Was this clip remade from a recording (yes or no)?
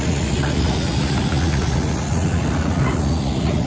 yes